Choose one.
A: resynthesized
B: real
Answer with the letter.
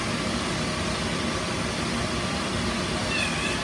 B